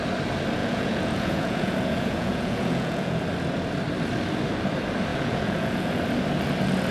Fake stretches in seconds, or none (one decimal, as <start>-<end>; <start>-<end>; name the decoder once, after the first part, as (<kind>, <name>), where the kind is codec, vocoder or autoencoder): 0.6-3.2 (vocoder, Vocos); 5.1-6.0